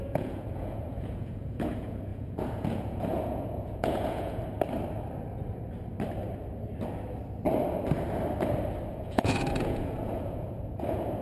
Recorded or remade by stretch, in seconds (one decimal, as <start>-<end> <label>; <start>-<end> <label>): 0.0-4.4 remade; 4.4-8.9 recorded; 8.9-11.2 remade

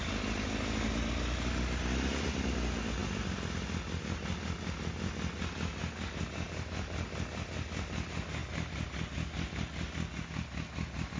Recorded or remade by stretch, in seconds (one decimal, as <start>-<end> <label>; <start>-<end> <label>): 0.0-11.2 recorded

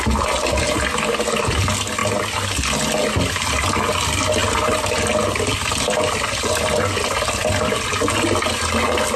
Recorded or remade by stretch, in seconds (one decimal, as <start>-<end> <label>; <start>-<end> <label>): 0.0-9.2 recorded

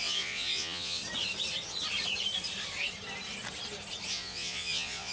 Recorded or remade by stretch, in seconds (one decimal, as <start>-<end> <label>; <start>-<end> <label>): 0.0-1.0 remade; 1.0-4.1 recorded; 4.1-5.1 remade